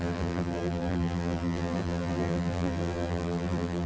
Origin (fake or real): fake